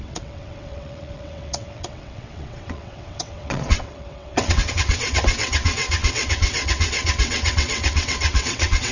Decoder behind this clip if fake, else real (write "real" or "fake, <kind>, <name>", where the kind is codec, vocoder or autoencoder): fake, vocoder, WaveNeXt